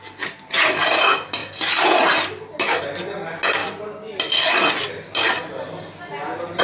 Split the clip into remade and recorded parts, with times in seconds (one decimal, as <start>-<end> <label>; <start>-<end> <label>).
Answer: 0.0-6.6 recorded